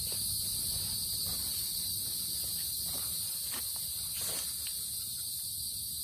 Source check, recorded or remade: recorded